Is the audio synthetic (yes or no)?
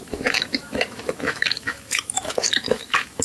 yes